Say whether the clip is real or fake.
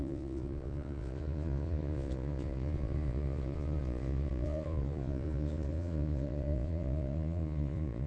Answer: fake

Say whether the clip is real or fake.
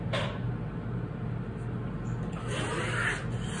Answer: real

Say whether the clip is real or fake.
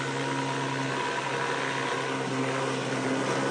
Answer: real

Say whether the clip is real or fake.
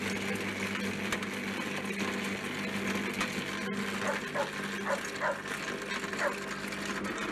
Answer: real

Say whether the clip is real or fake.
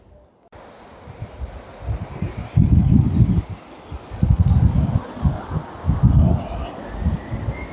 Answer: real